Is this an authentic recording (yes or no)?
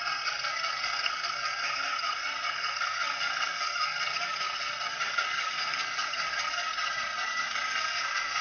no